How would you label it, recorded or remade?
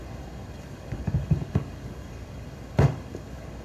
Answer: remade